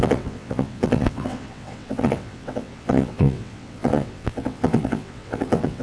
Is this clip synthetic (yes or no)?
yes